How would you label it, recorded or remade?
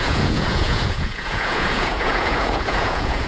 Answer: remade